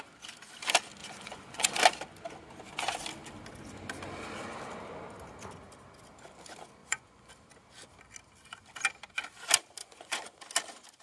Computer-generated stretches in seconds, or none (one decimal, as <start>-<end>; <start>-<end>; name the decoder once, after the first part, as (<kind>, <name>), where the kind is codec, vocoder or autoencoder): 1.0-1.8 (vocoder, Vocos); 6.8-7.3; 9.8-10.4